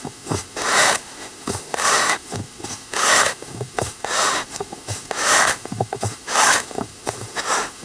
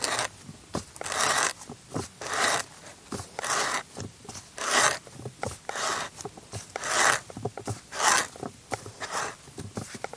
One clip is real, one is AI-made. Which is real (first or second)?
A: second